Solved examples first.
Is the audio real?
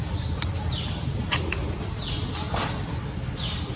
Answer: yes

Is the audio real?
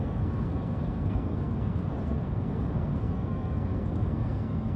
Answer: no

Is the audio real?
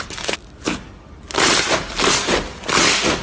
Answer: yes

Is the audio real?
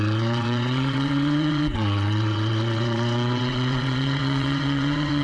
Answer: no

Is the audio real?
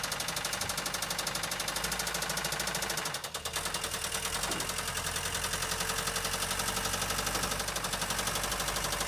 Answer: yes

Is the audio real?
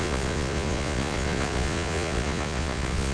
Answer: no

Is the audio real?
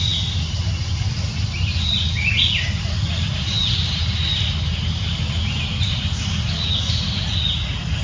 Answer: yes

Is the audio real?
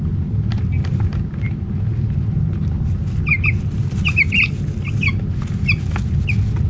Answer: yes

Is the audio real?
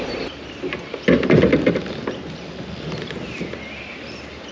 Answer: yes